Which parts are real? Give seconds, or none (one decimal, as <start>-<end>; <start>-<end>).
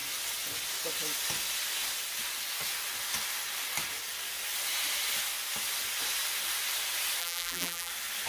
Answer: 0.0-7.2; 7.9-8.3